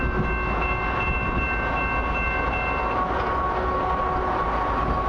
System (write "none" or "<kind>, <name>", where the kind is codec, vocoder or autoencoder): none